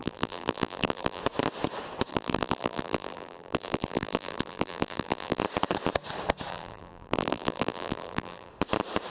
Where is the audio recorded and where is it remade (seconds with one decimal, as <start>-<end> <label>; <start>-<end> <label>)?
0.0-1.2 remade; 1.2-2.1 recorded; 2.1-5.4 remade; 5.4-6.5 recorded; 6.5-8.5 remade; 8.5-9.1 recorded